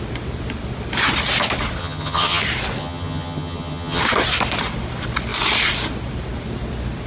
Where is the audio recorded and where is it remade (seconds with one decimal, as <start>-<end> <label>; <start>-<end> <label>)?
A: 0.0-1.8 recorded; 1.8-2.4 remade; 2.4-2.8 recorded; 2.8-4.0 remade; 4.0-7.1 recorded